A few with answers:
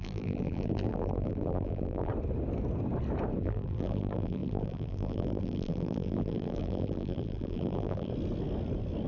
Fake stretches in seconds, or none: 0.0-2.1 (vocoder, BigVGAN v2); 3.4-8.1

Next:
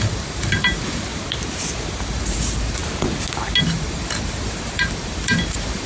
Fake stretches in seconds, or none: 0.0-1.1 (vocoder, BigVGAN v2); 2.1-2.8; 3.6-5.9

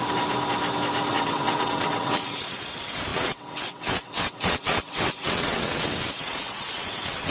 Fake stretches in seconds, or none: 1.1-7.3 (vocoder, WaveNeXt)

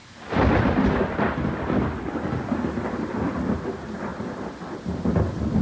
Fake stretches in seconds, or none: none

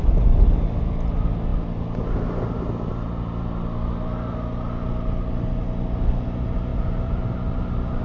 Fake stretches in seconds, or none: 6.7-8.0 (vocoder, BigVGAN v2)

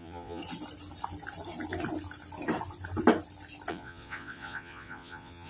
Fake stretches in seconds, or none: 0.0-0.4 (vocoder, Vocos); 3.7-5.5